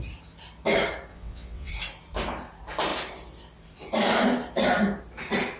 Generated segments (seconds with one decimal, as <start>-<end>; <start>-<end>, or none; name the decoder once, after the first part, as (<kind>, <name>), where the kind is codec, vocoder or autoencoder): 1.1-1.7 (vocoder, WaveNeXt)